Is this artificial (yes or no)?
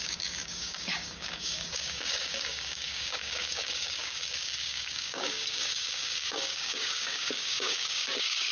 yes